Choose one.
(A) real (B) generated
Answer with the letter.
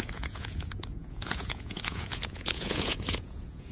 B